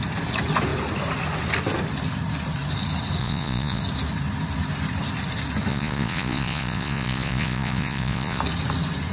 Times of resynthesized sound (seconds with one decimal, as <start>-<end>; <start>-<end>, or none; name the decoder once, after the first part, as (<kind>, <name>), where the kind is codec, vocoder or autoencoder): 3.2-3.8 (vocoder, Vocos); 5.7-8.4